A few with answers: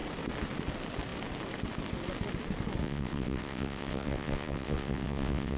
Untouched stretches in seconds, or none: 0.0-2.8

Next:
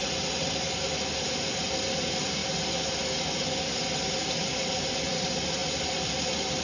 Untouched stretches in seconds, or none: 0.0-6.6

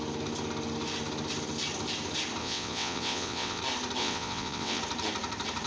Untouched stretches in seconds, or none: 0.0-2.4; 3.6-4.0; 4.8-5.7

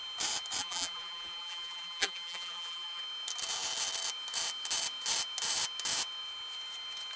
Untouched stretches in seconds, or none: 0.0-0.6; 3.0-7.2